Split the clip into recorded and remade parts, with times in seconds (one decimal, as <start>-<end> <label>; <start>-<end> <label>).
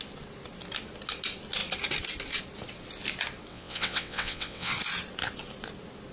0.0-3.5 recorded; 3.5-4.7 remade; 4.7-6.1 recorded